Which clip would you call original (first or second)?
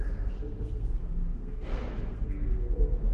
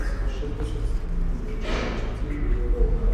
second